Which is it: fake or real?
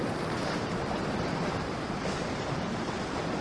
fake